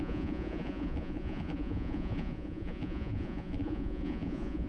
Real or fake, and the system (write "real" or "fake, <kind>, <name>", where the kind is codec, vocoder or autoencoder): fake, vocoder, Vocos